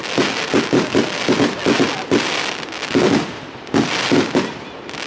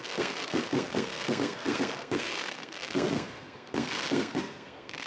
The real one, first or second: first